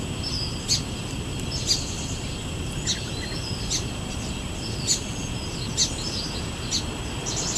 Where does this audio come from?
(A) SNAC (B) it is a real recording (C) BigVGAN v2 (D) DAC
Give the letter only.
B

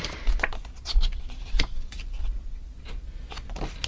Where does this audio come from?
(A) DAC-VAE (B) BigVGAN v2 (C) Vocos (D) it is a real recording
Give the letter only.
D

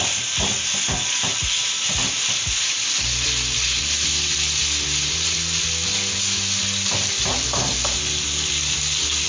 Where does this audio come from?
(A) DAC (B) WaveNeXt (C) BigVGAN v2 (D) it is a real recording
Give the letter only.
D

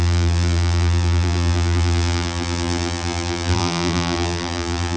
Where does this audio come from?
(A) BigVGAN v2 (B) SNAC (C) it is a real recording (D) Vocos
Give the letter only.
A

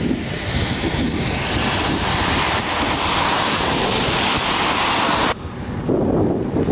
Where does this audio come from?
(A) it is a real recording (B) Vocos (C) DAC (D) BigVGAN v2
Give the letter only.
A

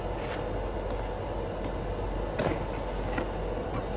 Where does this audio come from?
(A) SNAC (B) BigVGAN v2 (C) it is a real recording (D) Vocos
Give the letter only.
C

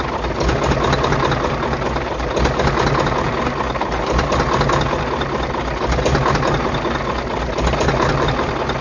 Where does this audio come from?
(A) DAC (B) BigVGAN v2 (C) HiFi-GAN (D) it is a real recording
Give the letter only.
D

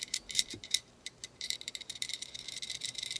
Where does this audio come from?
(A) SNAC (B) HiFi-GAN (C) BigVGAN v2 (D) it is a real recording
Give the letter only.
C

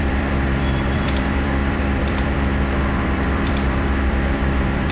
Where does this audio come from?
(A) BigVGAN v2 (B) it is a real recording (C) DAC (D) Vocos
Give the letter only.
A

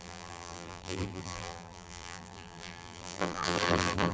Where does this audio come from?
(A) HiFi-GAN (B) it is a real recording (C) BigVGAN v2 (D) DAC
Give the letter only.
C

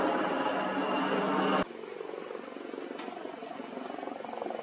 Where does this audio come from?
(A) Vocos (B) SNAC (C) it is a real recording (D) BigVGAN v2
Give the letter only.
C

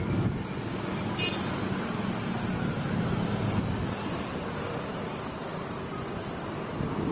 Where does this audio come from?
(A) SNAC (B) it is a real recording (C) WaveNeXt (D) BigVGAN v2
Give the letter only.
B